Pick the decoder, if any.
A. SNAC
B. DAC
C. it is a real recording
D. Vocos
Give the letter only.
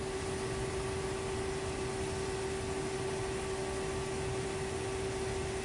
C